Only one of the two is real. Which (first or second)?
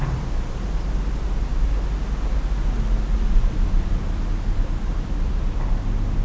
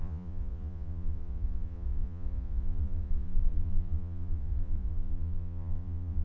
first